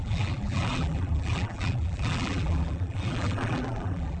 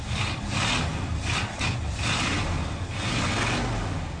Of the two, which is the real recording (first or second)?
second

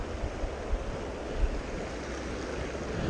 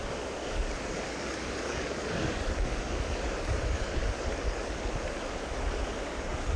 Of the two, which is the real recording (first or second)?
first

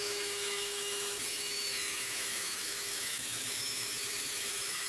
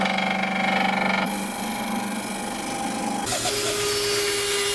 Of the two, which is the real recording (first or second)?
second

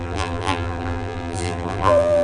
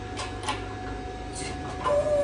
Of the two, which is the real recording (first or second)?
second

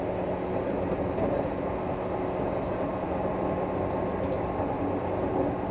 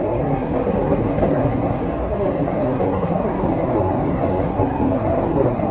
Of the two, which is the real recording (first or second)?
first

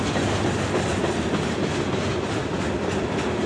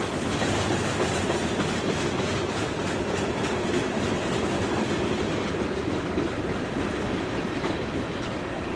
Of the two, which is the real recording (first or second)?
first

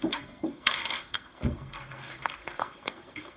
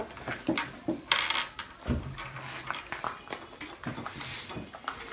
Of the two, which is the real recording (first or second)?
second